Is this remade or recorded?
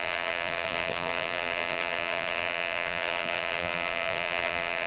remade